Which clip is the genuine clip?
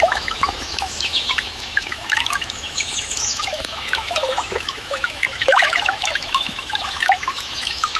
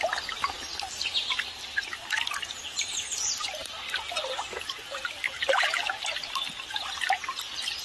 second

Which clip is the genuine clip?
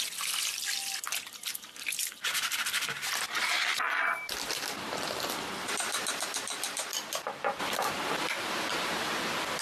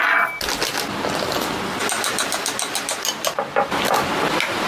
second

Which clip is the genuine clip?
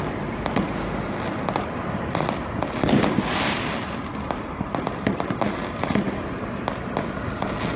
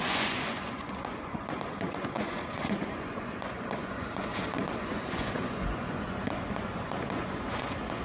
first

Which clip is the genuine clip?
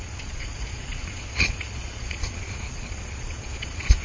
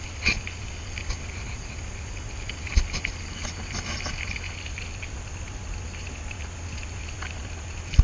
second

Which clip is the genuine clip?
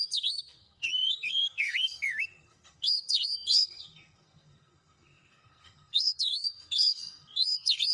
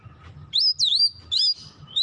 second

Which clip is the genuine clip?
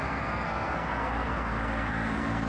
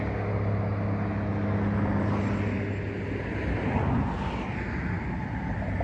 second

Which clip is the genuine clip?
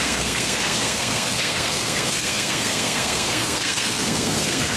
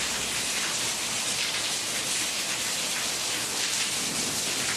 second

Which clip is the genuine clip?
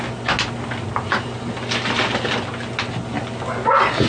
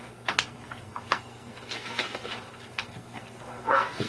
first